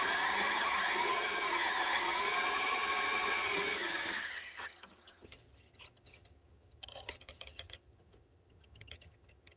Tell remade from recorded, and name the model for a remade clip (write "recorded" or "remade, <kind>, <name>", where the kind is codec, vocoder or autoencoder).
remade, vocoder, HiFi-GAN